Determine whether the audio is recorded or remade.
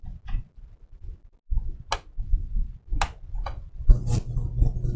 recorded